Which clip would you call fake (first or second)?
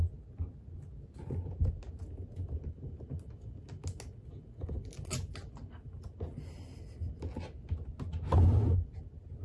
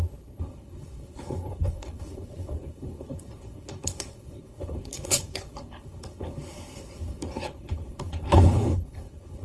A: second